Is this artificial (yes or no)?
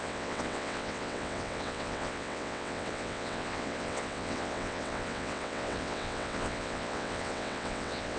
yes